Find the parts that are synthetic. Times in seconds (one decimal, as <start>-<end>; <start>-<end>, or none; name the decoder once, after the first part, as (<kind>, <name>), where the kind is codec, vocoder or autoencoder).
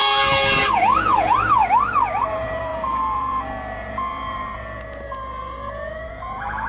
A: 0.6-1.6 (vocoder, Vocos); 2.3-6.7